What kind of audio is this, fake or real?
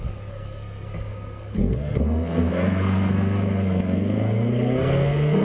fake